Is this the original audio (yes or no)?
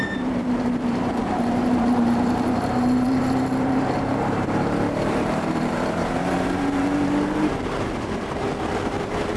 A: no